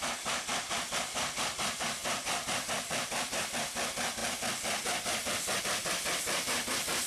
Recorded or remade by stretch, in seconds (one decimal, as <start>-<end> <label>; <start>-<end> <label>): 0.0-7.1 recorded